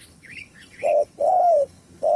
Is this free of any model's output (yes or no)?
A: no